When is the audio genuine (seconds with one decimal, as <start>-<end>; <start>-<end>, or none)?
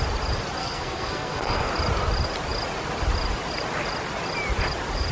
0.0-0.6; 1.7-5.1